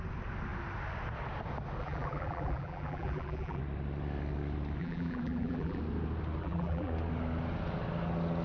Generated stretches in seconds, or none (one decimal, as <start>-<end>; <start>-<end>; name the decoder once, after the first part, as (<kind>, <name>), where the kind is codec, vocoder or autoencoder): 1.8-3.6 (vocoder, BigVGAN v2); 4.8-5.8; 6.4-6.9